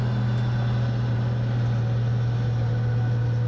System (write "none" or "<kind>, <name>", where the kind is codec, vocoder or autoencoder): none